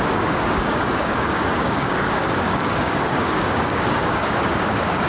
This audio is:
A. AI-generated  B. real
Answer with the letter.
A